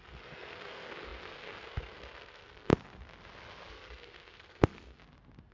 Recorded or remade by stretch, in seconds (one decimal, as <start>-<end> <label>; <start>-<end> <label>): 0.0-2.7 remade; 2.7-3.7 recorded; 3.7-5.0 remade; 5.0-5.5 recorded